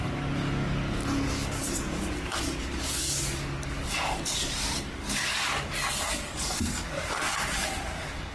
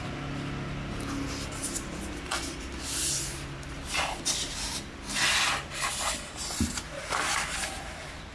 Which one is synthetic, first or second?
first